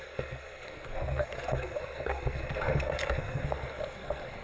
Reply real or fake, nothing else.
fake